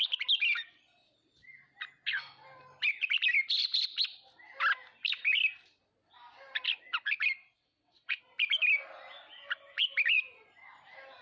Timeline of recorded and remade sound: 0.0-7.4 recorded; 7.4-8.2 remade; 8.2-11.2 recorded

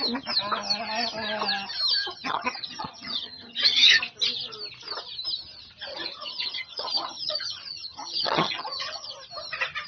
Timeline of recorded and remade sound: 0.0-2.0 recorded; 2.0-4.0 remade; 4.0-5.9 recorded; 5.9-9.1 remade; 9.1-9.9 recorded

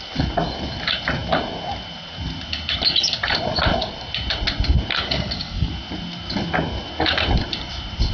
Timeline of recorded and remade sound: 0.0-4.9 recorded; 4.9-5.7 remade; 5.7-8.1 recorded

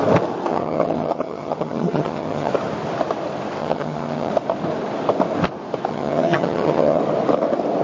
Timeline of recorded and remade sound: 0.0-0.5 recorded; 0.5-2.5 remade; 2.5-3.6 recorded; 3.6-4.3 remade; 4.3-5.9 recorded; 5.9-7.0 remade; 7.0-7.8 recorded